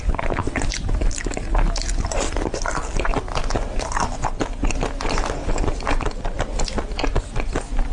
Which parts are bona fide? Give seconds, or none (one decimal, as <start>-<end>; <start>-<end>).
0.0-7.9